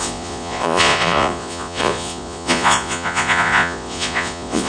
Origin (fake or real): fake